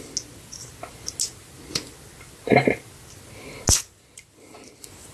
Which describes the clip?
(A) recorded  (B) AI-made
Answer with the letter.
A